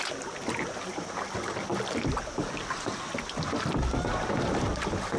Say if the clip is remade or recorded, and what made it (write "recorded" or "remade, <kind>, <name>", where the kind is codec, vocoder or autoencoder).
recorded